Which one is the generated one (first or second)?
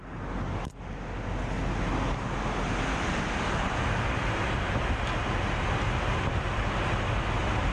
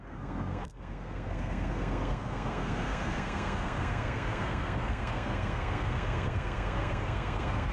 second